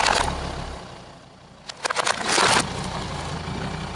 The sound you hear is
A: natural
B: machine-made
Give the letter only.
A